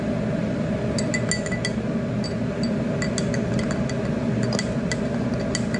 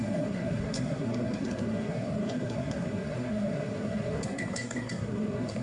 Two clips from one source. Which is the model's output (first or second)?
second